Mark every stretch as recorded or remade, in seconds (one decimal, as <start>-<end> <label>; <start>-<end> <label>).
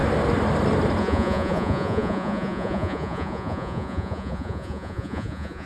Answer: 0.0-1.0 recorded; 1.0-5.7 remade